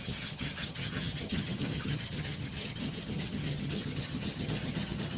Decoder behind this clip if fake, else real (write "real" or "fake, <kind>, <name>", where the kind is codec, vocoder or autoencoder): fake, vocoder, HiFi-GAN